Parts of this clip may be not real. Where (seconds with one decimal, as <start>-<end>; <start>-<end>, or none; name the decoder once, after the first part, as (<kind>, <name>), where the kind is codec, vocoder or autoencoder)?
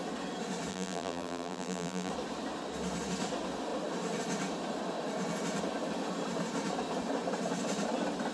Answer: 0.7-2.1 (vocoder, BigVGAN v2)